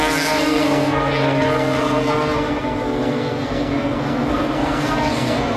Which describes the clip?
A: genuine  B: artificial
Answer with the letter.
B